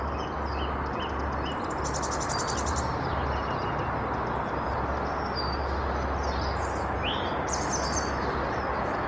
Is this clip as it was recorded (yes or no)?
yes